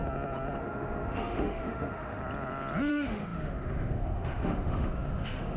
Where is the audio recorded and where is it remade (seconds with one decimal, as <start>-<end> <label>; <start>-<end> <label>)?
0.0-0.6 recorded; 0.6-2.2 remade; 2.2-2.9 recorded; 2.9-5.6 remade